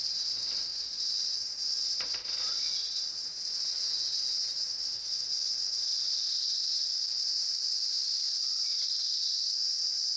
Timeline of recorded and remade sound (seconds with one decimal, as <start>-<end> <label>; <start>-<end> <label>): 0.0-0.7 remade; 0.7-5.9 recorded; 5.9-10.2 remade

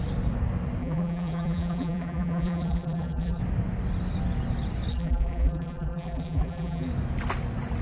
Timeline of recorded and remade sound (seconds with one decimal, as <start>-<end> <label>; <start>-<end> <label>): 0.0-0.8 recorded; 0.8-3.4 remade; 3.4-4.9 recorded; 4.9-6.9 remade; 6.9-7.8 recorded

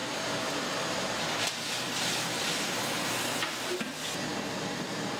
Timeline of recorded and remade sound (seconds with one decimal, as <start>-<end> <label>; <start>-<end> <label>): 0.0-3.1 remade; 3.1-5.2 recorded

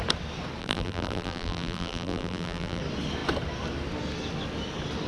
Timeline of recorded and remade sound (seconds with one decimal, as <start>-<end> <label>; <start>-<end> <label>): 0.0-0.6 recorded; 0.6-2.8 remade; 2.8-5.1 recorded

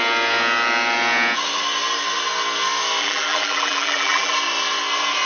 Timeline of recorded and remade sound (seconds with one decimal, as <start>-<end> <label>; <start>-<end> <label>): 0.0-3.0 recorded; 3.0-4.3 remade; 4.3-5.3 recorded